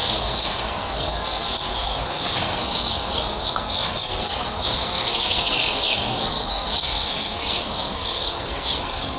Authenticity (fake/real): fake